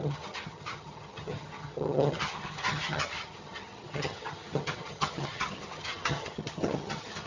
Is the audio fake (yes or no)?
yes